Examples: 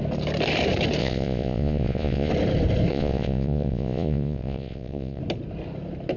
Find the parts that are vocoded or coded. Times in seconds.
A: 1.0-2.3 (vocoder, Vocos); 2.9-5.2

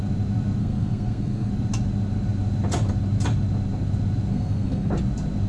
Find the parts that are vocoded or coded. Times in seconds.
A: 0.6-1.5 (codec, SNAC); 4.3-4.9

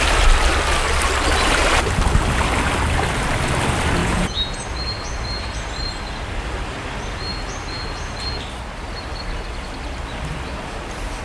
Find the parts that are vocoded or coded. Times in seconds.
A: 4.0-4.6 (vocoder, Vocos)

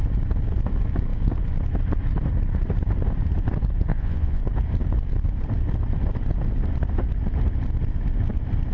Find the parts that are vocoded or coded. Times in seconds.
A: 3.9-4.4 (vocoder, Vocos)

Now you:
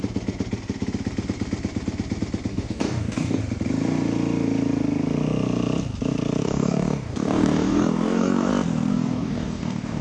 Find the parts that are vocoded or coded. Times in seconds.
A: 2.5-3.4 (codec, DAC); 6.4-8.5; 8.9-10.0

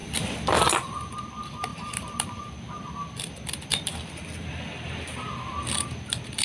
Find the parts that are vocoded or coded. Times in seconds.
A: 0.7-6.4 (vocoder, BigVGAN v2)